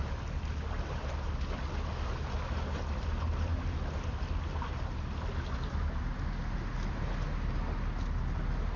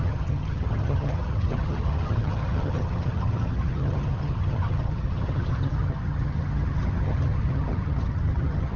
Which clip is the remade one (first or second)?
second